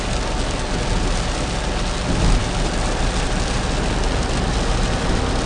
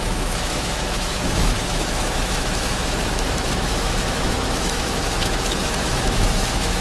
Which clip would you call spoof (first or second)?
second